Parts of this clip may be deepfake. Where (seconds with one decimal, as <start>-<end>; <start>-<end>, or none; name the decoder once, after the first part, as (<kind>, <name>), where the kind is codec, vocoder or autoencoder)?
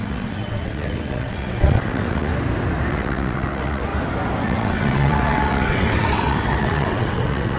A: 0.0-2.3 (vocoder, WaveNeXt); 2.9-3.9; 4.4-7.6